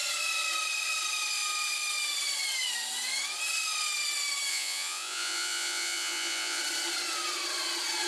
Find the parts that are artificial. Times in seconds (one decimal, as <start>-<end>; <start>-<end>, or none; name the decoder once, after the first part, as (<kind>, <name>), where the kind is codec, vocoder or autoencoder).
4.5-6.6 (vocoder, Vocos)